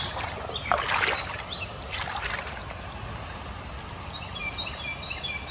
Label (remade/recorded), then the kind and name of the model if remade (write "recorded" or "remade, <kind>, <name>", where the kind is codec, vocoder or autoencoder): recorded